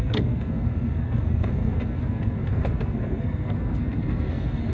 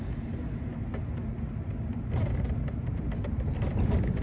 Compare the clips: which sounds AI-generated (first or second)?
first